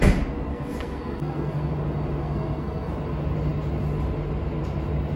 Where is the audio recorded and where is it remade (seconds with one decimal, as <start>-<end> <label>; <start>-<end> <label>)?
0.0-0.5 recorded; 0.5-1.7 remade; 1.7-2.2 recorded; 2.2-2.9 remade; 2.9-5.2 recorded